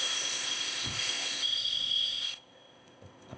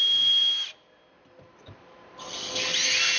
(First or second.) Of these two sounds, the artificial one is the first